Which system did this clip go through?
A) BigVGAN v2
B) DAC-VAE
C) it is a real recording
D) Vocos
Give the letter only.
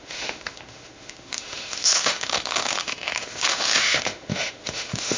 B